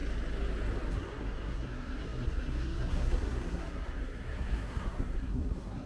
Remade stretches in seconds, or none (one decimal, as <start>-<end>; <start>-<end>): 0.9-5.9